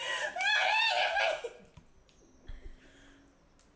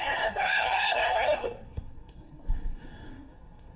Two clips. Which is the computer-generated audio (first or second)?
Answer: second